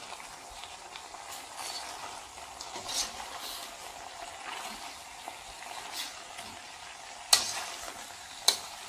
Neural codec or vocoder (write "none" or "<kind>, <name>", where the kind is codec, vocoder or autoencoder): none